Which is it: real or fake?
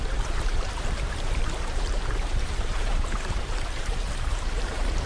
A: fake